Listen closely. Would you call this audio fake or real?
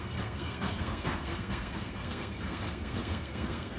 fake